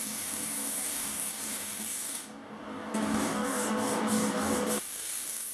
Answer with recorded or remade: remade